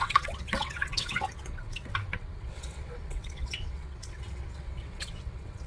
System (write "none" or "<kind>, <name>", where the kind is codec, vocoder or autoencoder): vocoder, WaveNeXt